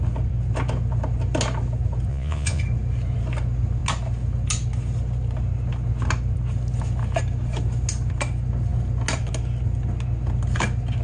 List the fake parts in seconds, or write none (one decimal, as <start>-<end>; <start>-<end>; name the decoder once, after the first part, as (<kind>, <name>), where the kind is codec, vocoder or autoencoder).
2.1-2.6 (vocoder, Vocos)